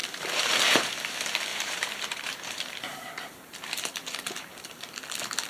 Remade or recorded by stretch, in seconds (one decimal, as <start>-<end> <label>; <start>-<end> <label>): 0.0-0.9 remade; 0.9-1.5 recorded; 1.5-4.8 remade; 4.8-5.5 recorded